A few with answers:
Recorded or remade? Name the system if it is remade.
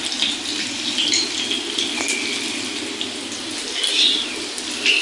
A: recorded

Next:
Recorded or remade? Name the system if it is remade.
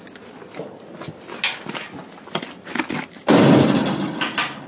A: recorded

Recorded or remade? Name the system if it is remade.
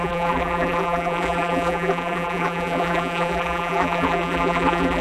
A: remade, vocoder, BigVGAN v2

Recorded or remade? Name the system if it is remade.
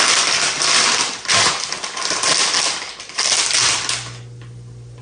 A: recorded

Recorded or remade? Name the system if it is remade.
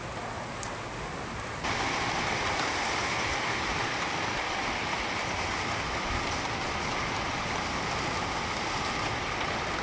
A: recorded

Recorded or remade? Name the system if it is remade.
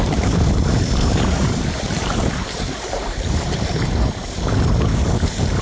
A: remade, vocoder, BigVGAN v2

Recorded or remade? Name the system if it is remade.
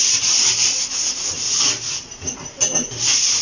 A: recorded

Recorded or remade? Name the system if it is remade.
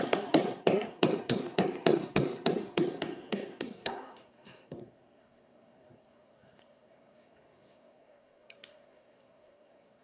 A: remade, codec, SNAC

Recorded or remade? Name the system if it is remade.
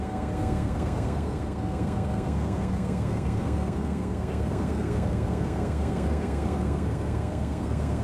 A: remade, codec, SNAC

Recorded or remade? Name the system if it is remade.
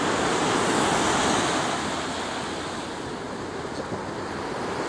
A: recorded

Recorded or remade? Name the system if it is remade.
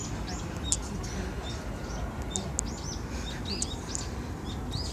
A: recorded